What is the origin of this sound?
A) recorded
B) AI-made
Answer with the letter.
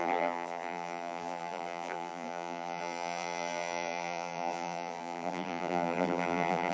B